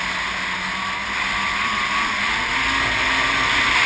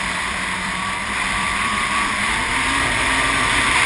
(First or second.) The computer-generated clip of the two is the second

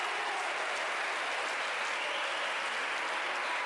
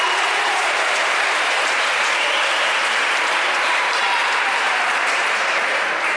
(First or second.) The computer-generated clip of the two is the second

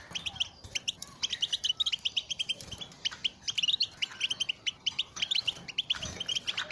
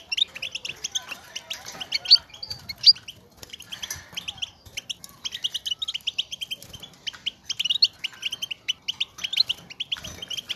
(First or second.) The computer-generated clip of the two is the first